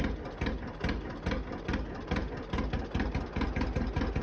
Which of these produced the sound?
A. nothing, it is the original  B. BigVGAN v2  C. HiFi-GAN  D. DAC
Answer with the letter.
A